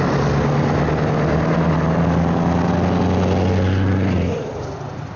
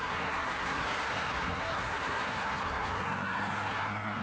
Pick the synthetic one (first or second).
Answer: second